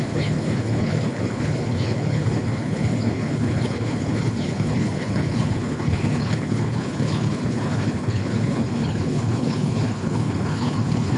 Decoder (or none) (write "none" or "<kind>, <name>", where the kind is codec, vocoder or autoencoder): codec, HILCodec